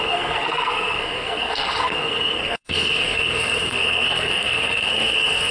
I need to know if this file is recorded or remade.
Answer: remade